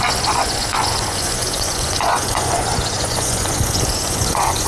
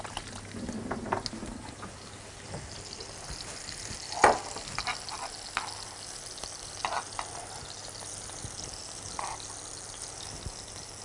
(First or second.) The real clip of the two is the second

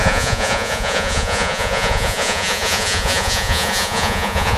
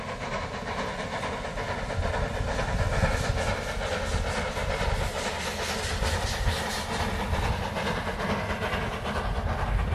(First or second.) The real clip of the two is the second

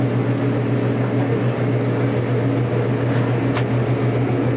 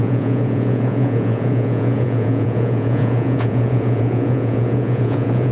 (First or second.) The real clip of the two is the first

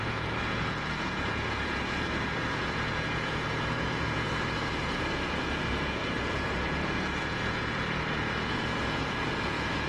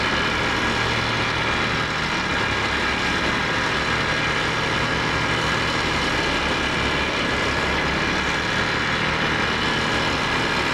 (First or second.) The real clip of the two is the second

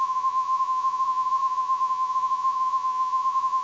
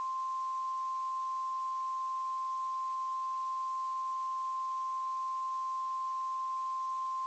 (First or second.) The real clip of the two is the second